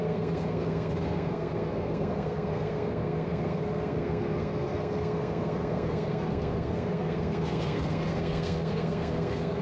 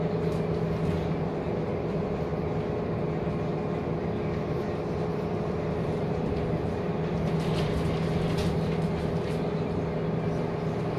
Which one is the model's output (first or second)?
first